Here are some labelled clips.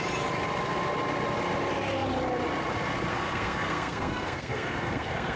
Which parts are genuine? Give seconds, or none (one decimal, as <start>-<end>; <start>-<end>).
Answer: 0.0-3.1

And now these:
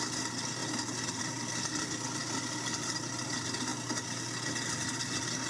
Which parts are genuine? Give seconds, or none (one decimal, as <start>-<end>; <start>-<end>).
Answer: 0.0-5.5

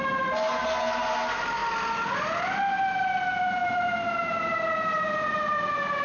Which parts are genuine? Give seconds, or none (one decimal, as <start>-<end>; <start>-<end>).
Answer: 0.0-6.0

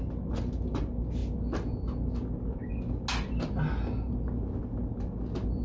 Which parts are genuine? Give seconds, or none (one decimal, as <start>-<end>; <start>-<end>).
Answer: 0.0-5.6

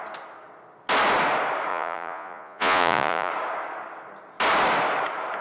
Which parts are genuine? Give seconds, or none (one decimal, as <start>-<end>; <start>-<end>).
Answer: 0.0-1.7; 3.3-5.4

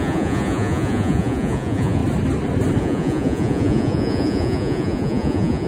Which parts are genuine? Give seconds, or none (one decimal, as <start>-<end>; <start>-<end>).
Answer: 2.0-2.8